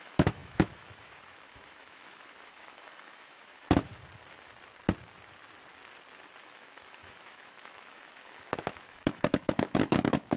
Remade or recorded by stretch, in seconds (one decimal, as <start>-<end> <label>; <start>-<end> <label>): 0.0-3.9 remade; 3.9-6.4 recorded; 6.4-10.4 remade